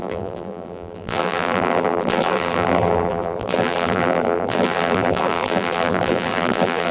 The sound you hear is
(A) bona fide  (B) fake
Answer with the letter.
B